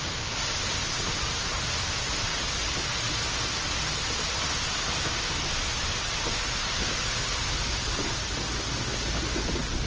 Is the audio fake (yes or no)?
no